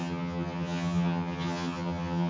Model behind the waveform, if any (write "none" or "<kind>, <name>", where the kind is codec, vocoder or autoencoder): vocoder, HiFi-GAN